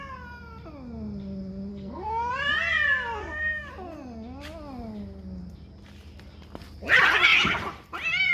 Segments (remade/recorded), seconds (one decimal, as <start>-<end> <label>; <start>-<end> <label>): 0.0-1.7 recorded; 1.7-2.3 remade; 2.3-3.2 recorded; 3.2-3.7 remade; 3.7-8.3 recorded